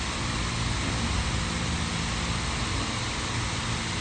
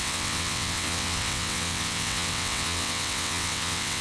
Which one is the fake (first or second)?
second